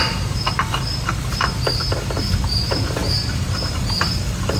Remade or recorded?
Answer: remade